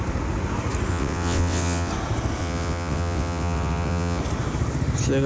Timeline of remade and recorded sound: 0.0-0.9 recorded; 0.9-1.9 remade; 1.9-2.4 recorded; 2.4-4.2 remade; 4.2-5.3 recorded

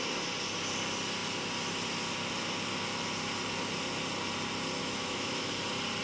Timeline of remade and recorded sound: 0.0-4.8 recorded; 4.8-5.5 remade; 5.5-6.0 recorded

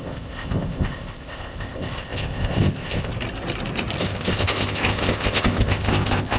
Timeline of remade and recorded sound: 0.0-3.1 remade; 3.1-4.0 recorded; 4.0-6.4 remade

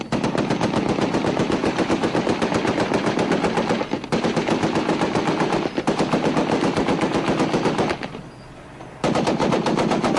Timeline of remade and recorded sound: 0.0-10.2 recorded